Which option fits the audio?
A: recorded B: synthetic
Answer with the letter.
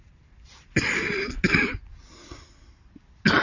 A